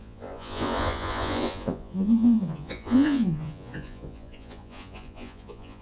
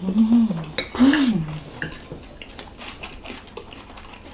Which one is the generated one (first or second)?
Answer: first